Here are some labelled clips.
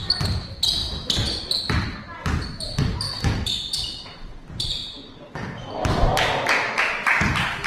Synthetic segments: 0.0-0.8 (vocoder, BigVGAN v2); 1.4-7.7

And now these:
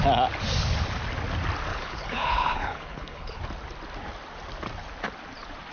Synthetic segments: 1.7-3.4 (codec, HILCodec)

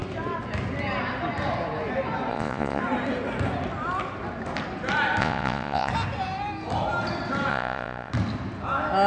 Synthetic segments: 2.3-2.8 (vocoder, Vocos); 5.2-5.9; 7.5-8.1